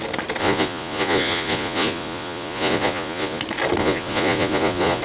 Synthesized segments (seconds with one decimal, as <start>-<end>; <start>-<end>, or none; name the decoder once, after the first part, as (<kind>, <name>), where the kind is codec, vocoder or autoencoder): 0.4-3.4 (vocoder, Vocos); 3.8-5.0